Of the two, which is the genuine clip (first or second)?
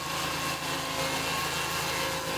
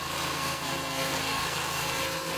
first